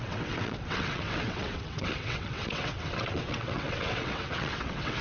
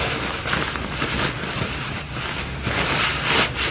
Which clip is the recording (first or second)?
second